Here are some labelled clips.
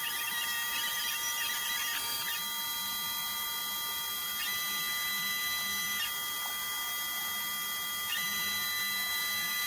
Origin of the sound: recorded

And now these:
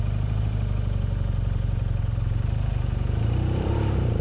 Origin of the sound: remade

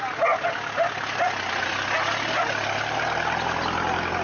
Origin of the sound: recorded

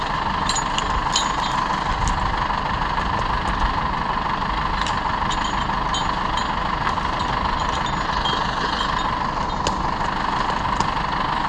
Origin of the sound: recorded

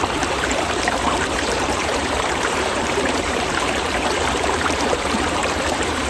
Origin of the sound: remade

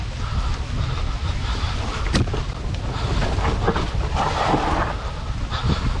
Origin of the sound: recorded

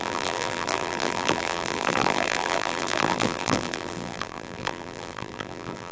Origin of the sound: remade